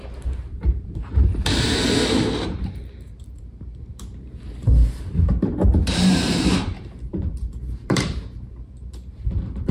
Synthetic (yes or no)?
yes